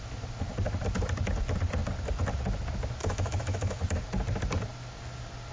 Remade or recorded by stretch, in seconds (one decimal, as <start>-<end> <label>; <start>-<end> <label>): 0.0-3.0 recorded; 3.0-3.8 remade; 3.8-5.5 recorded